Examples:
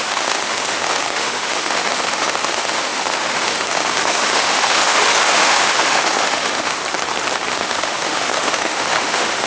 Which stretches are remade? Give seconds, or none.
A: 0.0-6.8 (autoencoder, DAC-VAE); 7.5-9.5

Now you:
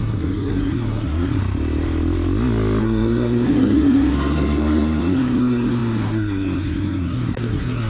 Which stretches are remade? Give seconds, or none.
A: 0.0-1.4 (codec, SNAC); 2.8-7.9

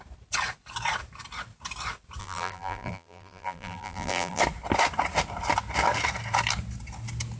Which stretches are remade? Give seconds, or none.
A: 2.2-4.4 (vocoder, BigVGAN v2)

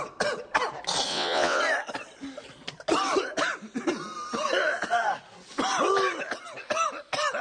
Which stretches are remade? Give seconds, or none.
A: 1.1-1.6 (vocoder, WaveNeXt)

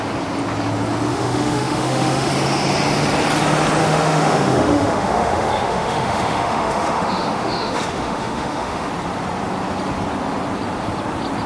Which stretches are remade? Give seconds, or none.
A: 1.1-2.3 (autoencoder, DAC-VAE); 3.8-8.9

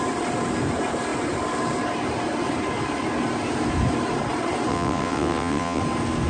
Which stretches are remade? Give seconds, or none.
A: 4.7-5.8 (vocoder, WaveNeXt)

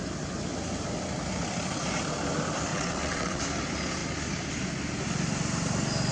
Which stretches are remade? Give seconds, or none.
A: 2.7-3.4 (vocoder, WaveNeXt)

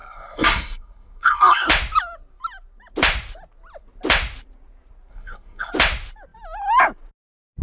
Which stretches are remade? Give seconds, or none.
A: 0.0-1.7 (codec, SNAC); 5.1-5.7